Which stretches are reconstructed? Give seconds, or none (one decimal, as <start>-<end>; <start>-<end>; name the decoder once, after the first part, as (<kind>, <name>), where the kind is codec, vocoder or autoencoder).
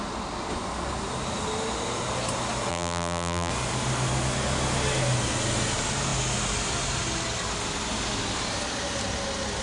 2.7-3.5 (vocoder, BigVGAN v2)